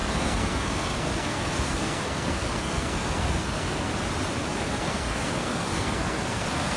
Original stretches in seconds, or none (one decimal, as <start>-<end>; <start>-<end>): 3.9-4.5